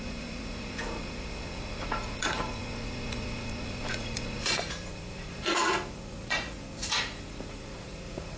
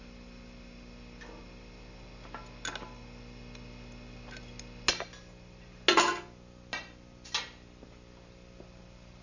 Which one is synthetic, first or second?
first